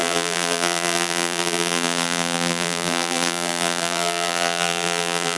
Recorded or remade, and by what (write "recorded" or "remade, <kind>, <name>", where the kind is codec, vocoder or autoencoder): remade, vocoder, BigVGAN v2